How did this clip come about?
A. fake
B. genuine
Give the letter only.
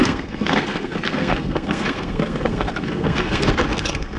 A